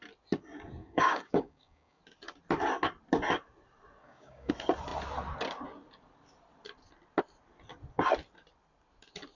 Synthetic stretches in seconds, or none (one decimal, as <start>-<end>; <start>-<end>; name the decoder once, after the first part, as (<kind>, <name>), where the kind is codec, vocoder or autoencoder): 0.8-2.0 (codec, DAC); 4.0-4.5